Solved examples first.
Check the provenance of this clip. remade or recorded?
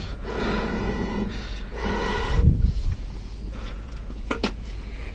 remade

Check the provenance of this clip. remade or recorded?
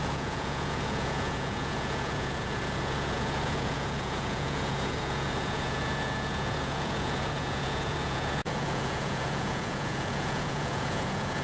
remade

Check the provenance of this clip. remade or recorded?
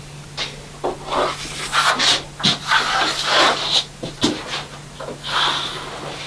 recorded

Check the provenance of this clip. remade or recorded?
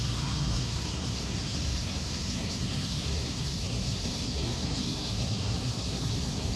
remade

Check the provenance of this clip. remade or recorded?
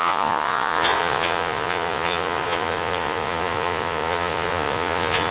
remade